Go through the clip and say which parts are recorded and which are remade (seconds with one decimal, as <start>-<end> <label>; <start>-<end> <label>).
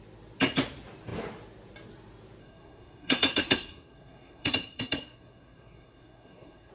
0.0-2.4 recorded; 2.4-6.7 remade